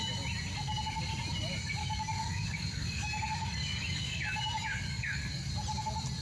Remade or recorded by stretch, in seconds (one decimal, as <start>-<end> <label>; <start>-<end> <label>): 0.0-1.8 recorded; 1.8-5.5 remade; 5.5-6.2 recorded